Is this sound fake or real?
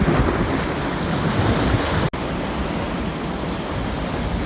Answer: real